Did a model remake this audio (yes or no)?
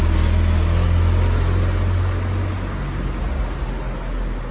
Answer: no